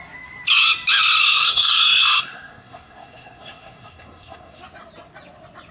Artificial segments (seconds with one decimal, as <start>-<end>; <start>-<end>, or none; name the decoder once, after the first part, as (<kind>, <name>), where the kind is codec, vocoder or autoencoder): 1.2-4.6 (codec, SNAC)